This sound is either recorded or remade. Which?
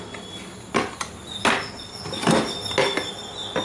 recorded